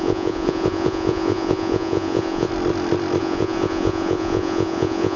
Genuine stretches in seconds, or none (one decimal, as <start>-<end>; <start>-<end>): 2.5-3.2